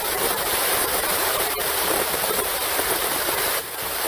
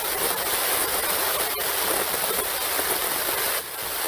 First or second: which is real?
second